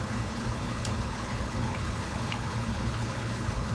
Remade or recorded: remade